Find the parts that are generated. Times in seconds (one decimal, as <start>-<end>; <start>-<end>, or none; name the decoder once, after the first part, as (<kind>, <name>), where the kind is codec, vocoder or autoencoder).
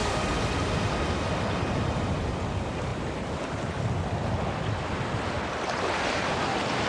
none